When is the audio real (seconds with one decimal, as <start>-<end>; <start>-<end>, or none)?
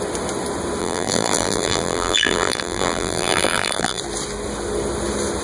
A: 0.0-0.8; 4.0-5.4